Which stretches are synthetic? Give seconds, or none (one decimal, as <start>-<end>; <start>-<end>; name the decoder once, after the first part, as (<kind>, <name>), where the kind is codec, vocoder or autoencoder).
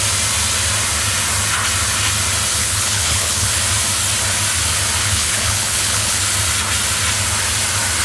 2.6-3.6 (codec, HILCodec); 5.0-6.2